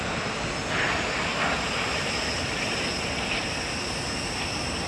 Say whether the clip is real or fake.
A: real